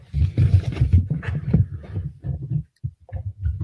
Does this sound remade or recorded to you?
recorded